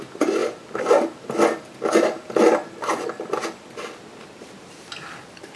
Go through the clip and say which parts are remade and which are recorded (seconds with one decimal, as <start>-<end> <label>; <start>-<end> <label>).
0.0-5.6 recorded